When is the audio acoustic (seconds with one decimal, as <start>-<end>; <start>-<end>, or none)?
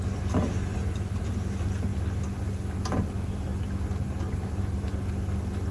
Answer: 0.0-5.7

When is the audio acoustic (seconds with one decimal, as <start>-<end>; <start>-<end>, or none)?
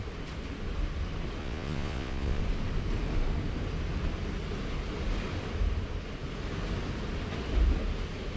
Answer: 0.0-1.4; 2.4-8.4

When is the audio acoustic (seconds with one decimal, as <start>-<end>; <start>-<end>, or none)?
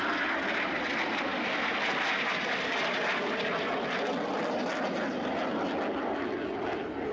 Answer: 0.0-7.1